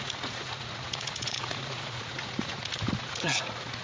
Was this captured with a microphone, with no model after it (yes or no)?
no